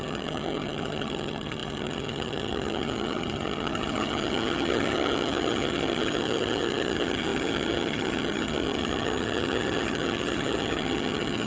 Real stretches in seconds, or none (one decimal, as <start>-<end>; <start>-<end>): none